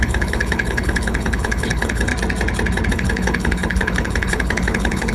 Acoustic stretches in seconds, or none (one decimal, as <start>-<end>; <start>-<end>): 2.1-2.9